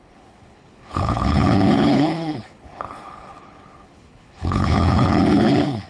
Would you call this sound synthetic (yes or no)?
yes